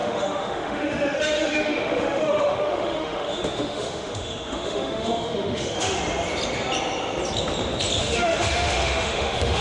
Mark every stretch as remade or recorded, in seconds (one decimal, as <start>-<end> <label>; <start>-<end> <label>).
0.0-6.0 remade; 6.0-8.0 recorded; 8.0-9.6 remade